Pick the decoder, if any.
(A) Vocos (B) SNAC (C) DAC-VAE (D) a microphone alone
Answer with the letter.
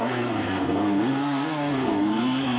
B